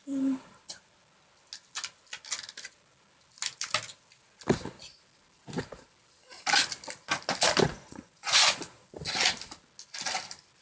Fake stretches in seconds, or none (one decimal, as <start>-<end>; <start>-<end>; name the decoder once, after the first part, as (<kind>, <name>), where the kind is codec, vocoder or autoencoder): 7.7-8.6 (vocoder, Vocos)